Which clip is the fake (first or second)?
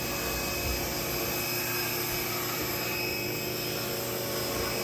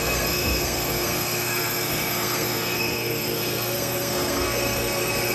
second